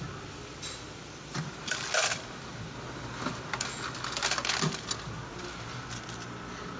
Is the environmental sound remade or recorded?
recorded